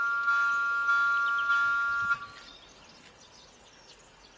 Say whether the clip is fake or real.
real